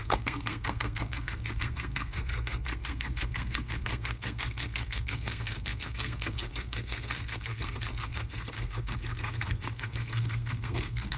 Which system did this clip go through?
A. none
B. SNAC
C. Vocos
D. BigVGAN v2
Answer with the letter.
B